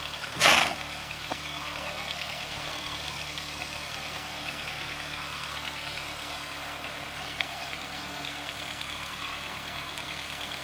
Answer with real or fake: fake